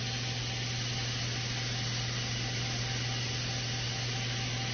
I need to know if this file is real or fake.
real